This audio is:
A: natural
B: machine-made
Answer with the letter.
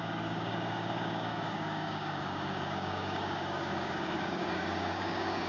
B